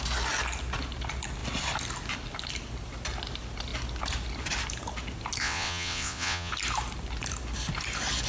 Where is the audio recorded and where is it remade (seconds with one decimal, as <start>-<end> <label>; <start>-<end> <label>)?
0.0-5.4 recorded; 5.4-6.5 remade; 6.5-8.3 recorded